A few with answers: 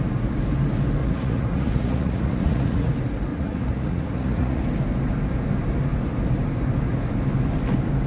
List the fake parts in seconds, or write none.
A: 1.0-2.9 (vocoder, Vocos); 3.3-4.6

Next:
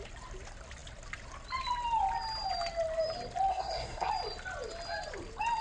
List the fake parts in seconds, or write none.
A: 3.5-4.1 (codec, SNAC)

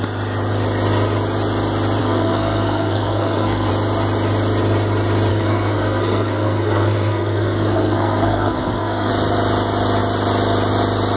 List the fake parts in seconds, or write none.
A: 2.0-3.7 (codec, SNAC); 5.3-9.1

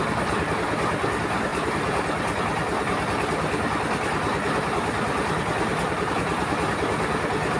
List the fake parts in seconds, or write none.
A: none

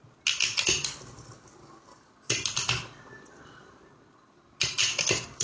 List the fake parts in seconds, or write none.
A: none